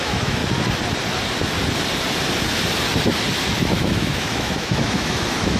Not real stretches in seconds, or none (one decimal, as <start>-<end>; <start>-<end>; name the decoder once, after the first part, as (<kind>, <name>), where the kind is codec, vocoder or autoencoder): 0.0-0.4 (autoencoder, DAC-VAE); 3.6-5.6